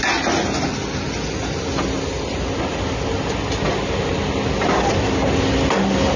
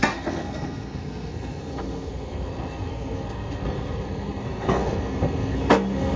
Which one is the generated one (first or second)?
second